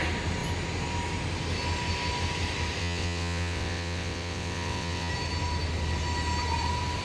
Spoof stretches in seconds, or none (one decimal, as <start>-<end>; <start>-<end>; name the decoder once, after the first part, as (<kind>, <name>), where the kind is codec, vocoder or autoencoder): 2.8-5.1 (vocoder, WaveNeXt)